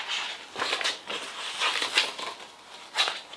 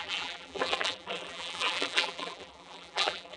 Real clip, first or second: first